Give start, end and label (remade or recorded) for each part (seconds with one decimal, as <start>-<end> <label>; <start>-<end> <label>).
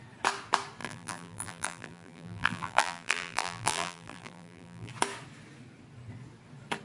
0.0-0.8 recorded; 0.8-4.9 remade; 4.9-6.8 recorded